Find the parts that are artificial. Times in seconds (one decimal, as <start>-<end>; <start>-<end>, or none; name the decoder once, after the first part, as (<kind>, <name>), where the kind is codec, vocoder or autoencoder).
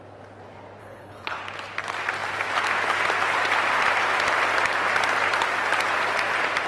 0.8-1.4 (codec, HILCodec)